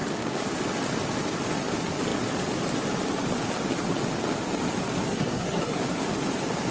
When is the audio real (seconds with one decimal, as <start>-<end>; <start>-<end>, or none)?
0.0-5.1; 5.8-6.7

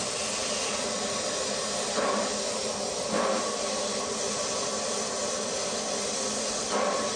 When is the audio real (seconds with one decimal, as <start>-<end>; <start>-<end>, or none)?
0.0-7.2

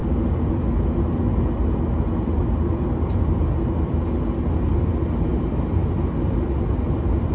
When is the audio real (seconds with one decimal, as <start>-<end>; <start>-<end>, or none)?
0.0-7.3

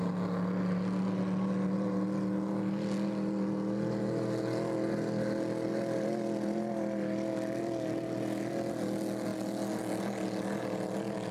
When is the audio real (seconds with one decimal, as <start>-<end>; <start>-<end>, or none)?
0.0-11.3